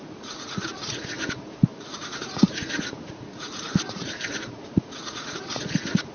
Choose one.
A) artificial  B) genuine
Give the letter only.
A